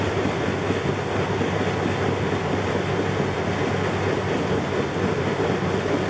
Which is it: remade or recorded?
recorded